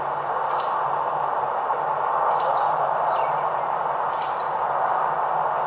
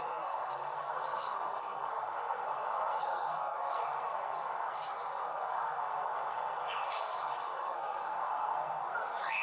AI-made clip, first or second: second